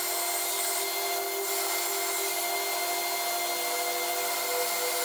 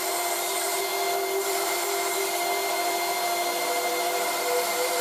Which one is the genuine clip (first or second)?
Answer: first